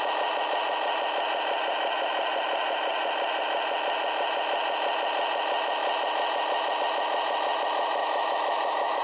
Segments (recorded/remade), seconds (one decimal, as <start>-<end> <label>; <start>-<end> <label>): 0.0-8.0 recorded; 8.0-9.0 remade